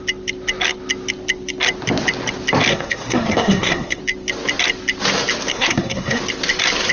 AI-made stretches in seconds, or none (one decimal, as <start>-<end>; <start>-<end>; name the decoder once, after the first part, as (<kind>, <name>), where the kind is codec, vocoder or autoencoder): 2.7-4.0 (codec, SNAC); 5.5-6.2